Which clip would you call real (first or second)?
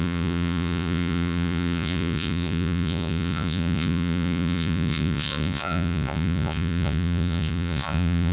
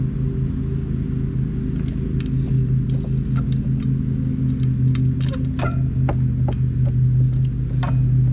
second